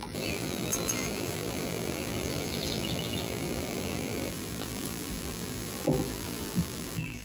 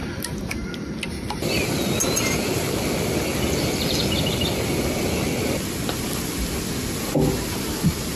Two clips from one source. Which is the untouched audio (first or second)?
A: second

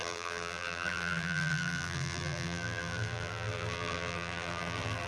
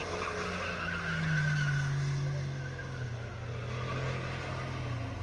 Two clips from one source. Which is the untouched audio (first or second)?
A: second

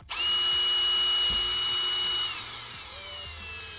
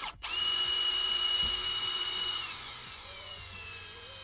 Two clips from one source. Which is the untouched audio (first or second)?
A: first